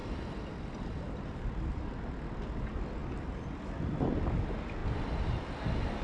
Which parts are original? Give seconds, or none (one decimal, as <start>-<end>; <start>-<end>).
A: 0.0-6.0